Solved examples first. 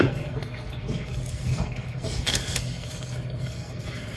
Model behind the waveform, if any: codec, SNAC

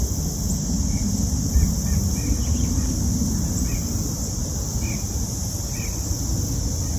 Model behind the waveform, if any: none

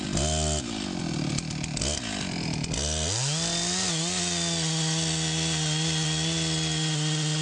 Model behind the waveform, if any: none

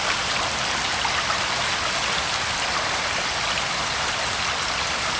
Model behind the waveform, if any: none